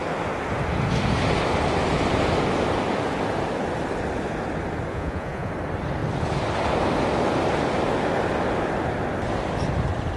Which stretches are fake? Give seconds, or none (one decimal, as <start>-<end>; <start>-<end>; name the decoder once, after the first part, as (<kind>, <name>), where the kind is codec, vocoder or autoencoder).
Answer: 4.9-5.5 (vocoder, Vocos)